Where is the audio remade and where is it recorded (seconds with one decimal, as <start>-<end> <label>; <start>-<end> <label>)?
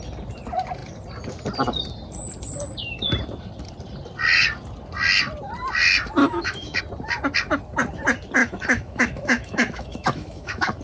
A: 0.0-6.2 recorded; 6.2-6.8 remade; 6.8-8.4 recorded; 8.4-10.8 remade